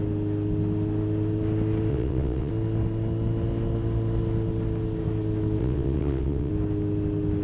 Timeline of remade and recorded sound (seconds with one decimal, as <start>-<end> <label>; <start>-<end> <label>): 0.0-1.9 recorded; 1.9-2.5 remade; 2.5-5.6 recorded; 5.6-6.5 remade; 6.5-7.4 recorded